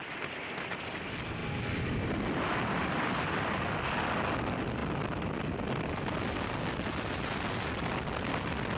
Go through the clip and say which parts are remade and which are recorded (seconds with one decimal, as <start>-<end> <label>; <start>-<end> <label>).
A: 0.0-1.4 recorded; 1.4-3.7 remade; 3.7-4.8 recorded; 4.8-5.9 remade; 5.9-8.8 recorded